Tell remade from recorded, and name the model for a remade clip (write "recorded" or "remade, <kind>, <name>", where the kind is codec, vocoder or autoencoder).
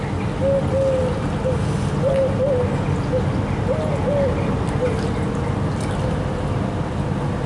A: recorded